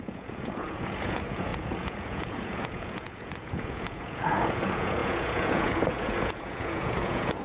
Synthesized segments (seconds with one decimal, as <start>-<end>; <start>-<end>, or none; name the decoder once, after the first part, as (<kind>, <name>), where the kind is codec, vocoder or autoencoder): 0.0-7.4 (vocoder, Vocos)

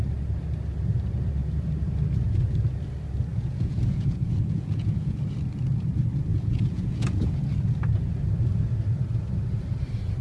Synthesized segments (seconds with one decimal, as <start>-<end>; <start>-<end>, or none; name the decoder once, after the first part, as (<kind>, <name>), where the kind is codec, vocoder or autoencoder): 3.3-5.2 (vocoder, Vocos); 6.3-7.4

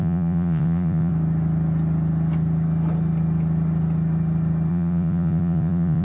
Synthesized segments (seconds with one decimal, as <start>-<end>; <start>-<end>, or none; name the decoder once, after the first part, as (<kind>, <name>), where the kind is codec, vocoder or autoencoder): 0.0-1.1 (vocoder, Vocos); 4.7-6.0